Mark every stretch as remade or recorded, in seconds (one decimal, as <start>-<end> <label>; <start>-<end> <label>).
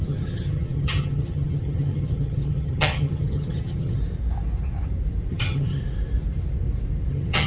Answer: 0.0-4.0 remade; 4.0-5.3 recorded; 5.3-5.8 remade; 5.8-7.1 recorded; 7.1-7.5 remade